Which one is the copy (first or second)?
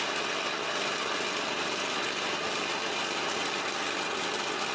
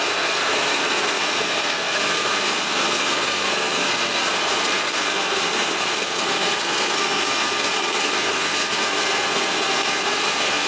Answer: second